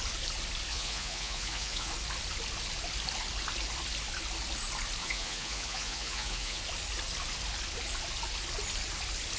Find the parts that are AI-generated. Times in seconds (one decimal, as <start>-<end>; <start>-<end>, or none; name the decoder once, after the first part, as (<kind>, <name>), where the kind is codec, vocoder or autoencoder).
0.7-1.9 (vocoder, Vocos); 5.0-6.6